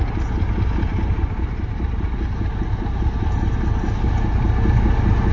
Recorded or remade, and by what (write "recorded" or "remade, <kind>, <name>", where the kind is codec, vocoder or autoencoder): recorded